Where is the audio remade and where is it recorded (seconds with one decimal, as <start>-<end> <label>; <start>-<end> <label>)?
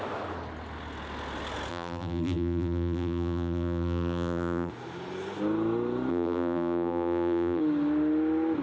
0.0-1.7 recorded; 1.7-4.7 remade; 4.7-6.1 recorded; 6.1-7.6 remade; 7.6-8.6 recorded